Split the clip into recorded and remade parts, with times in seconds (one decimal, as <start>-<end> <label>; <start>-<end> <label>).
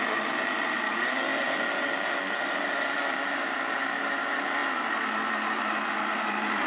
0.0-1.3 remade; 1.3-2.0 recorded; 2.0-6.7 remade